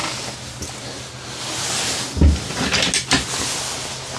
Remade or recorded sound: recorded